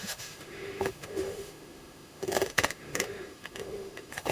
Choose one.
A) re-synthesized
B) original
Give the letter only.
A